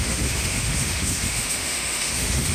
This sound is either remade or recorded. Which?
remade